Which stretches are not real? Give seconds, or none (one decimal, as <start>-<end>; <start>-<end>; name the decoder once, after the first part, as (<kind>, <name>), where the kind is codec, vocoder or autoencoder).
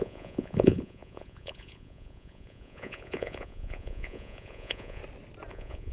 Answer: 0.0-5.0 (vocoder, Vocos); 5.5-5.9